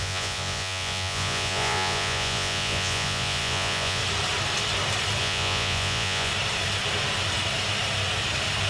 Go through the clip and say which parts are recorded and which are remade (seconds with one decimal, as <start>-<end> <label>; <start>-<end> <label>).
0.0-4.0 remade; 4.0-5.2 recorded; 5.2-6.3 remade; 6.3-8.7 recorded